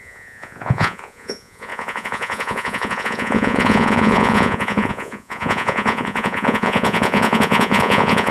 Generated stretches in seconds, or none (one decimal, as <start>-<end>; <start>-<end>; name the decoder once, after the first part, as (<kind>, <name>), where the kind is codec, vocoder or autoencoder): 0.0-8.3 (vocoder, Vocos)